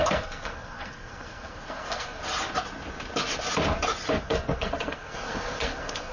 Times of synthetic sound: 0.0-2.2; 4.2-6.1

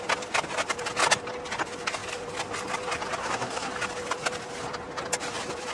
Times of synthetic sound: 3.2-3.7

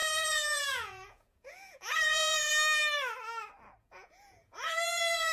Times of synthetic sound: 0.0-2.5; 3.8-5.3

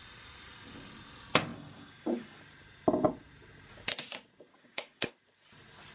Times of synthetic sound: 1.5-2.4; 4.5-5.1

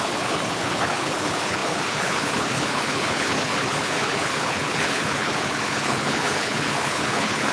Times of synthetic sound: 0.0-7.5

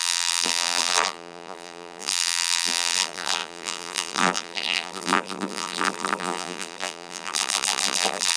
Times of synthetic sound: 0.0-8.4

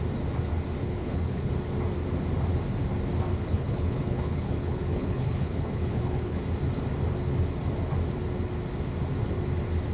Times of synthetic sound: 0.8-1.5; 3.3-6.4

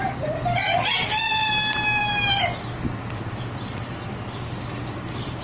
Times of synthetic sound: none